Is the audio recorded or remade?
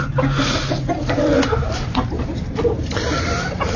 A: recorded